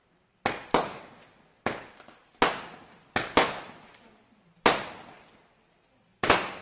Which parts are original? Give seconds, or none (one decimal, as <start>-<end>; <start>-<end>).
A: 0.0-6.6

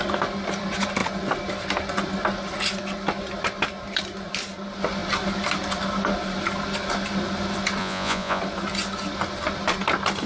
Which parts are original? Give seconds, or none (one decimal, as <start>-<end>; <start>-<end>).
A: 0.0-7.8; 8.4-10.3